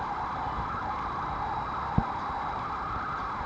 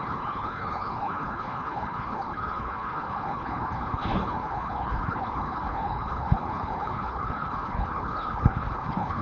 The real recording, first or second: first